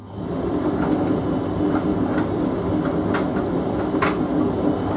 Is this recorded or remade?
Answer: recorded